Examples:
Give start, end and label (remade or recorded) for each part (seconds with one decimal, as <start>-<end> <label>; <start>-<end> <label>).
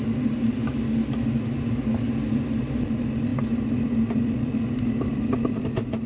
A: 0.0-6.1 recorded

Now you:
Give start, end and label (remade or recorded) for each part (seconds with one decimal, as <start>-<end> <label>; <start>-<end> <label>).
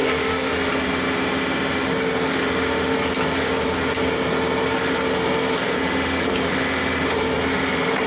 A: 0.0-0.7 remade; 0.7-8.1 recorded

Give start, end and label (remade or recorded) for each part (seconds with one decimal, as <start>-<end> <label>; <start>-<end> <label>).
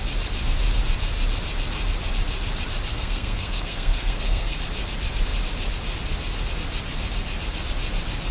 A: 0.0-2.9 recorded; 2.9-4.6 remade; 4.6-8.3 recorded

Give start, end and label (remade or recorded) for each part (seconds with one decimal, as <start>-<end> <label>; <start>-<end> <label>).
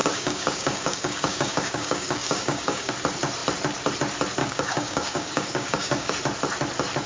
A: 0.0-2.9 remade; 2.9-4.4 recorded; 4.4-6.1 remade; 6.1-7.1 recorded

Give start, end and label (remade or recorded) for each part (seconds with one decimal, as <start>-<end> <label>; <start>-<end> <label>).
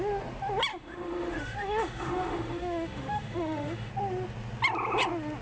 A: 0.0-0.7 recorded; 0.7-3.9 remade; 3.9-5.4 recorded